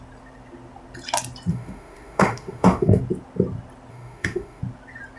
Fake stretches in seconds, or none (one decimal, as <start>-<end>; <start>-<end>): 1.5-3.0; 3.9-4.6